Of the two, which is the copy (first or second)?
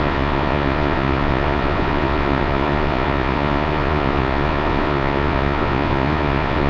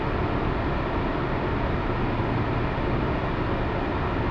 first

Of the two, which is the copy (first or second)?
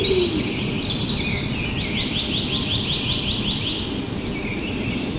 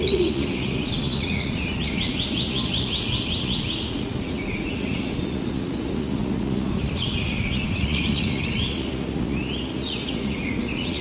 second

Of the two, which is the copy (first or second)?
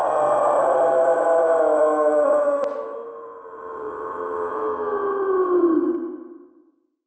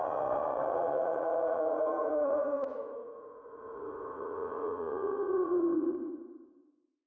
second